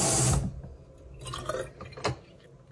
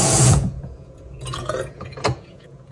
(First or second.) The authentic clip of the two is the first